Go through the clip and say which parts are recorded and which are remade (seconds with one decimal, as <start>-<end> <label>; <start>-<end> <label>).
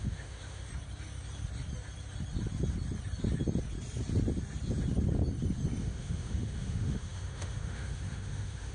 0.0-0.7 remade; 0.7-5.8 recorded; 5.8-8.7 remade